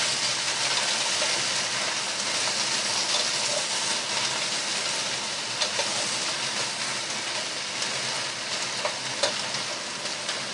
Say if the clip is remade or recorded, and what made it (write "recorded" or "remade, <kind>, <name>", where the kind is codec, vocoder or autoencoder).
recorded